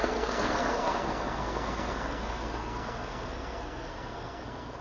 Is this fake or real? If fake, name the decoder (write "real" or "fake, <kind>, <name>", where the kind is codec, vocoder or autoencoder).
fake, codec, SNAC